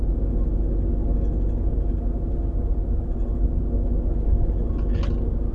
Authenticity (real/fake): real